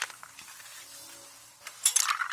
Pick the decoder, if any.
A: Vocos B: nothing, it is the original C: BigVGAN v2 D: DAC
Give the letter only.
B